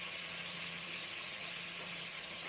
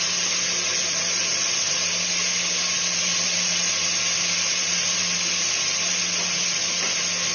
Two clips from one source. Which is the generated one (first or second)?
first